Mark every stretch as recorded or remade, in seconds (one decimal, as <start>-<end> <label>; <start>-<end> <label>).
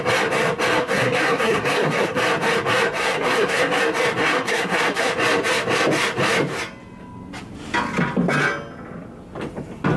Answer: 0.0-0.8 recorded; 0.8-2.2 remade; 2.2-3.0 recorded; 3.0-3.8 remade; 3.8-4.2 recorded; 4.2-5.1 remade; 5.1-10.0 recorded